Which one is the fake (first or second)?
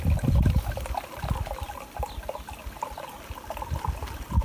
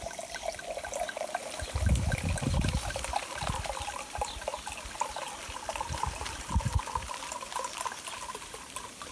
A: second